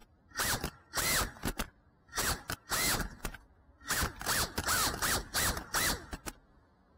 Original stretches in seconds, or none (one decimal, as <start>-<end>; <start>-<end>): 0.6-1.4; 2.0-7.0